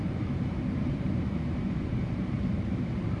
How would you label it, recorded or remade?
remade